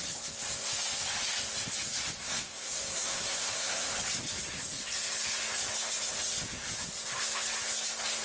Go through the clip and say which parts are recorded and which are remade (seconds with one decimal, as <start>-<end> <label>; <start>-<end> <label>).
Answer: 0.0-2.2 recorded; 2.2-3.9 remade; 3.9-8.2 recorded